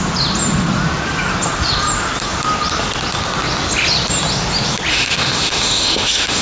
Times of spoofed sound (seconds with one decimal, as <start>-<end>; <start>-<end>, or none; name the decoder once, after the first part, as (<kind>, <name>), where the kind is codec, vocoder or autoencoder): 4.9-6.4 (autoencoder, DAC-VAE)